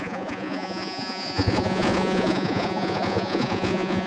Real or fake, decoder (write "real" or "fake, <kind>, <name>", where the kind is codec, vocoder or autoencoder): fake, vocoder, Vocos